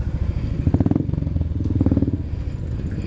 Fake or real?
real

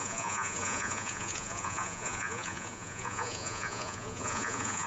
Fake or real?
fake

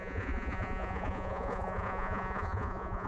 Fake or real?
fake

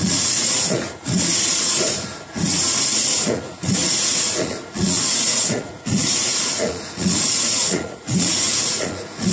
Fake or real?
fake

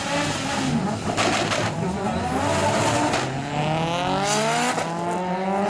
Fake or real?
real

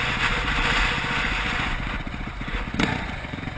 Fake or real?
fake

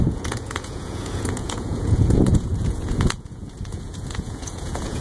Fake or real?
fake